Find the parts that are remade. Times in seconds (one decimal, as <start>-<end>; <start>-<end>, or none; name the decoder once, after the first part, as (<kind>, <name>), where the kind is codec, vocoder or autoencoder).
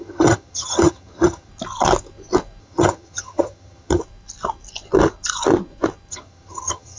0.0-1.5 (vocoder, HiFi-GAN); 2.6-4.0; 6.1-7.0